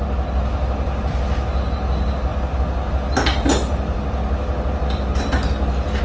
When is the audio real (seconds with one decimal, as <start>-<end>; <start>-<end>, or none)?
0.0-6.0